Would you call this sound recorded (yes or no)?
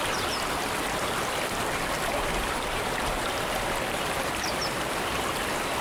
yes